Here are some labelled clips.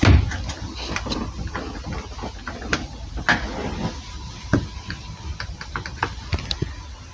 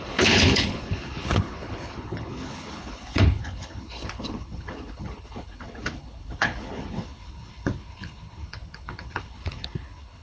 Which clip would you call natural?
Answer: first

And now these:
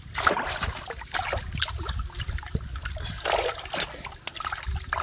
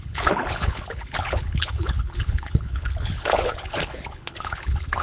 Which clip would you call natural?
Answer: first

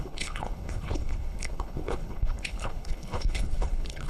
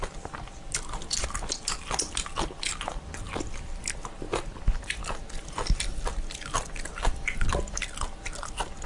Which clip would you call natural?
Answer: second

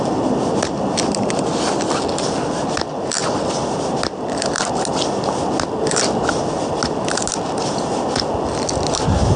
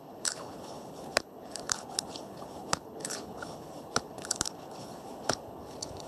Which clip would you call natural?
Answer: first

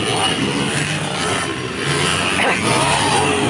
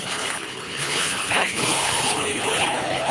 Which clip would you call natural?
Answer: first